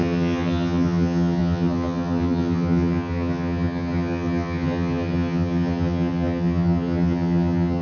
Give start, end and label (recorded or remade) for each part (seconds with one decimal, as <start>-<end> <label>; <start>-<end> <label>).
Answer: 0.0-7.8 remade